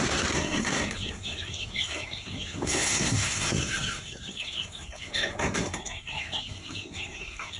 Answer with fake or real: fake